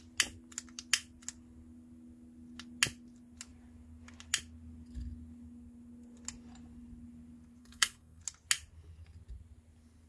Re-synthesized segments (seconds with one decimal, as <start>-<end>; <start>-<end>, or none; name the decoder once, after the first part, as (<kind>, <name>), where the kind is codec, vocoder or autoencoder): 7.6-8.2 (codec, SNAC)